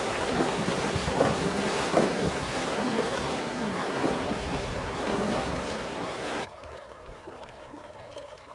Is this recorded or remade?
remade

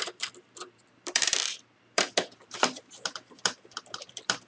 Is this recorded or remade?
remade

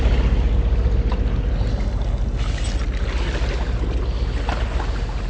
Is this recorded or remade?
recorded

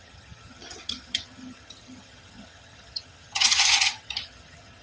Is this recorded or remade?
remade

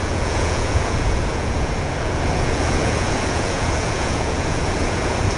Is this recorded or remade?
remade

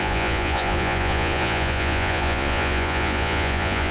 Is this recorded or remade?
remade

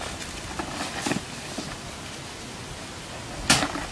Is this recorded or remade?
recorded